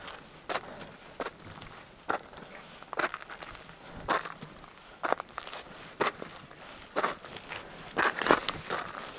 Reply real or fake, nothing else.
real